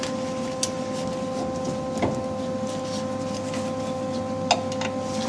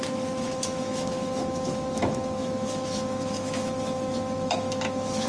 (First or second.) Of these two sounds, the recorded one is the first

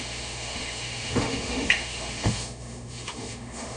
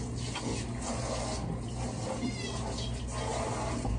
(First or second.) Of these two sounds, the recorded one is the second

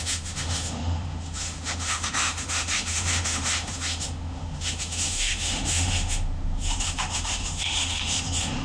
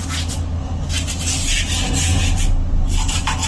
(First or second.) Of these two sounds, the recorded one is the second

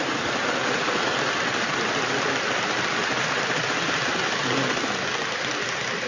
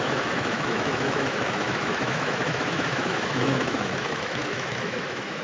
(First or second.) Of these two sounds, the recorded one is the first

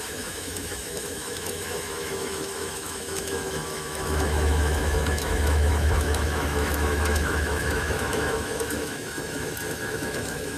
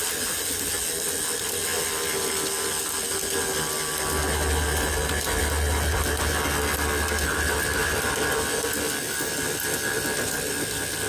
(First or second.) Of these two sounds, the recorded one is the second